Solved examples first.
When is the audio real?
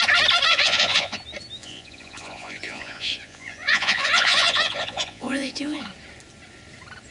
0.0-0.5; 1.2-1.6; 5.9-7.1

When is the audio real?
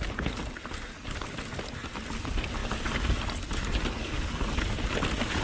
0.0-2.6; 3.2-4.0; 4.5-5.4